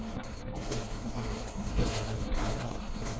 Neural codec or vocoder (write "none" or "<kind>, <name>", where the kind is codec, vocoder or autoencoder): codec, SNAC